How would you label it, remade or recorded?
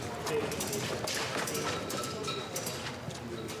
recorded